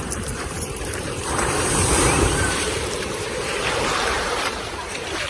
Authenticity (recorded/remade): remade